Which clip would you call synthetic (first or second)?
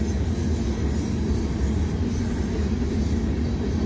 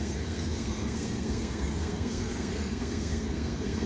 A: second